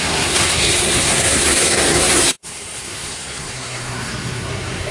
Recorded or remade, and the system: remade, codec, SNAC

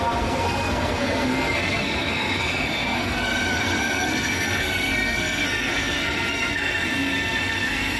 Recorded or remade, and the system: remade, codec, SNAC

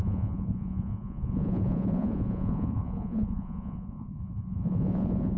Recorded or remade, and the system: remade, vocoder, Vocos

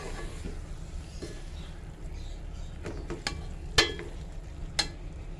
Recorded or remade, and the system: recorded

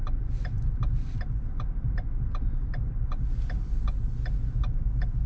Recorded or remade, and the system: recorded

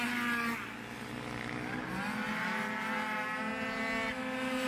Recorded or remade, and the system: recorded